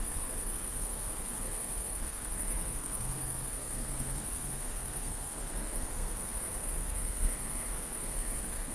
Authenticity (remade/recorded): remade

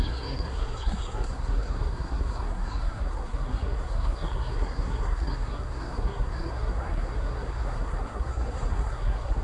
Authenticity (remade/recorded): remade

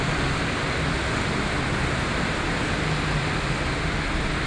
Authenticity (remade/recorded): recorded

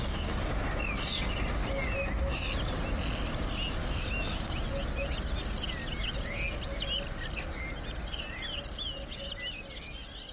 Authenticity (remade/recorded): recorded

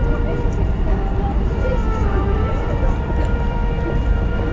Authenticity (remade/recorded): remade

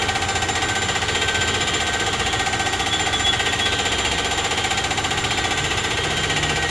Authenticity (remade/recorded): recorded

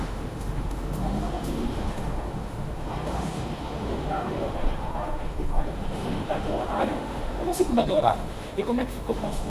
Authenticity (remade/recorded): remade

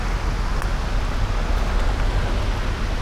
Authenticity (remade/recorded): recorded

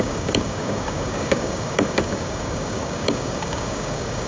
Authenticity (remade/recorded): remade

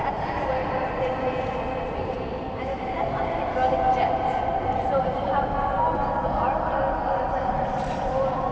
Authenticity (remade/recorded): recorded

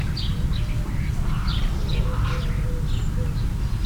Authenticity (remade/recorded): recorded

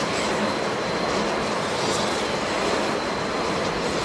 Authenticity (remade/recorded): recorded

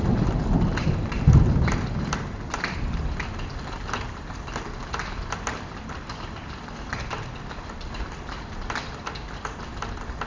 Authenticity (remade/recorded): recorded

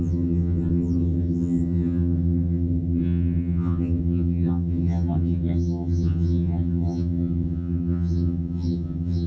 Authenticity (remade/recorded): remade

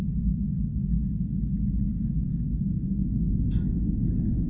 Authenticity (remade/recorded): recorded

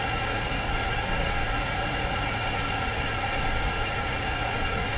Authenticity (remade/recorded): remade